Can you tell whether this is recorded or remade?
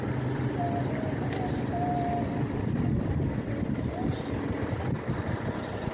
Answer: recorded